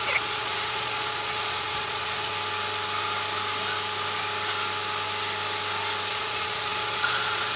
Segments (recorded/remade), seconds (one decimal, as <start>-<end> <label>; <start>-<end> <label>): 0.0-2.3 remade; 2.3-6.1 recorded; 6.1-7.6 remade